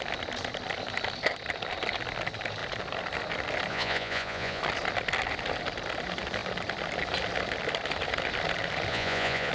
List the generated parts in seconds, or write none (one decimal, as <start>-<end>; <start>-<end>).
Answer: 3.7-4.6; 8.9-9.5

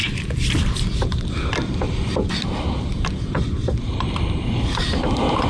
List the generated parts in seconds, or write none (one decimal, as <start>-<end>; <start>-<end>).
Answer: none

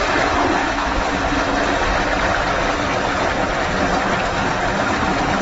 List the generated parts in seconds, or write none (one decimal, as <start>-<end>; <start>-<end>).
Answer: 0.6-1.2

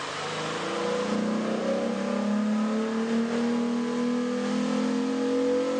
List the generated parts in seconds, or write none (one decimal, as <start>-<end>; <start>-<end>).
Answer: none